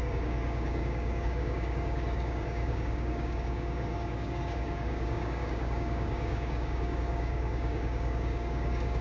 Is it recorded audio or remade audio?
remade